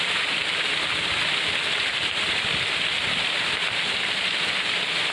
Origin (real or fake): real